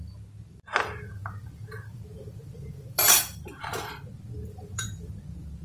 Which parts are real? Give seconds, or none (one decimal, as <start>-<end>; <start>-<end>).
0.0-0.5; 3.9-4.5; 5.1-5.6